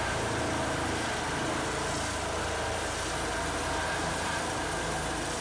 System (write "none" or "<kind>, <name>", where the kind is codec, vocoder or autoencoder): none